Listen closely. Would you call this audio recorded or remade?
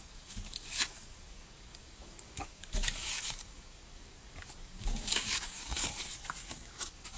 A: remade